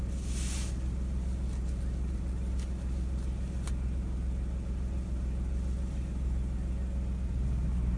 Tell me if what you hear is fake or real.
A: real